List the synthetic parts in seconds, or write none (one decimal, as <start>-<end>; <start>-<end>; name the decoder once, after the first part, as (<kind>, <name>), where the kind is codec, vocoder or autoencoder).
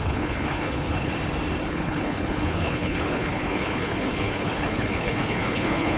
0.0-1.1 (codec, HILCodec); 1.7-6.0